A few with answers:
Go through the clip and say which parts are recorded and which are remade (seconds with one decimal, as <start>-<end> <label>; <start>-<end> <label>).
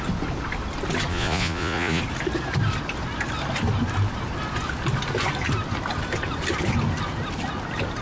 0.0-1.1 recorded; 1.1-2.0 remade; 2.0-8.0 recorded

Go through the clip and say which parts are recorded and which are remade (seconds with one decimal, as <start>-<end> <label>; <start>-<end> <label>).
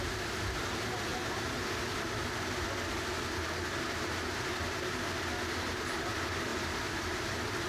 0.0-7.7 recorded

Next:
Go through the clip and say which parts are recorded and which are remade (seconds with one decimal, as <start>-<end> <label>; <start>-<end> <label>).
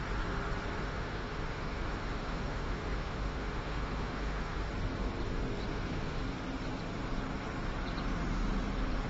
0.0-0.8 recorded; 0.8-4.7 remade; 4.7-5.7 recorded; 5.7-6.2 remade; 6.2-9.1 recorded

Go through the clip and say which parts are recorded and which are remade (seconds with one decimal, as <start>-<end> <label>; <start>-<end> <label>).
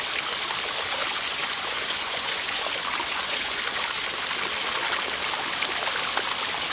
0.0-1.0 recorded; 1.0-2.6 remade; 2.6-3.1 recorded; 3.1-3.6 remade; 3.6-6.7 recorded